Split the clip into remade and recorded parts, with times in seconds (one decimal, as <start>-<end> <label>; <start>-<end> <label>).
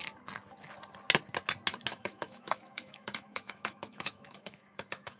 0.0-1.9 recorded; 1.9-5.2 remade